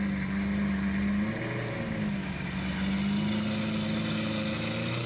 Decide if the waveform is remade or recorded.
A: recorded